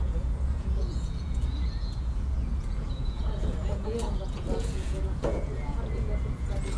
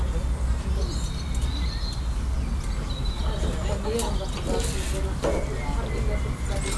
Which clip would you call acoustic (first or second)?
second